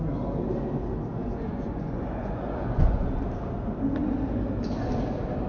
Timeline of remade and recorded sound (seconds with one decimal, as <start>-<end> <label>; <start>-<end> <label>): 0.0-1.1 recorded; 1.1-3.0 remade; 3.0-5.5 recorded